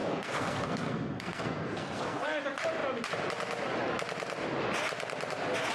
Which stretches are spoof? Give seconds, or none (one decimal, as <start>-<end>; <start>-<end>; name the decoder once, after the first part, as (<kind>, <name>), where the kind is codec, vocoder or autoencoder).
0.0-2.4 (codec, SNAC)